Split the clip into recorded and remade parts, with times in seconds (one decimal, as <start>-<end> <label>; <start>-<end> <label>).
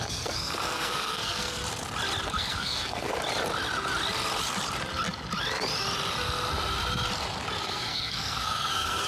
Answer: 0.0-1.6 remade; 1.6-2.3 recorded; 2.3-3.1 remade; 3.1-7.5 recorded; 7.5-9.1 remade